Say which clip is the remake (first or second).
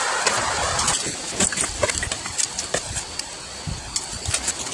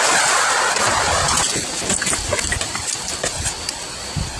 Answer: first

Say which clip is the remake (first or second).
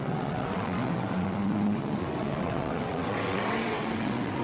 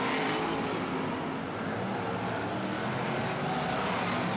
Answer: first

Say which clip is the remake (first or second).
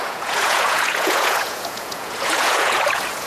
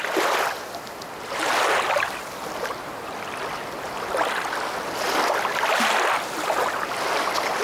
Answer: first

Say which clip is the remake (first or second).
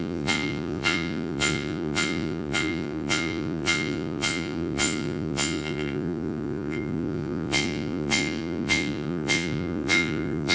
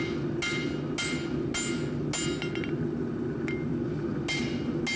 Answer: first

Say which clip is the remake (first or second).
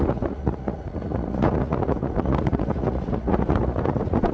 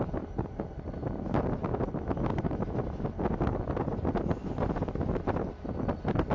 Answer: first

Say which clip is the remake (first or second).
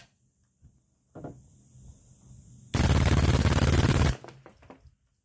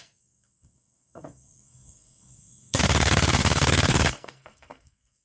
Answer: second